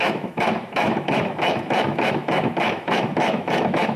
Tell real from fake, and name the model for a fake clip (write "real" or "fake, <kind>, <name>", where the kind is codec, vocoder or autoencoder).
fake, autoencoder, DAC-VAE